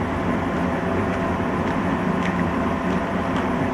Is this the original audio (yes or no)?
yes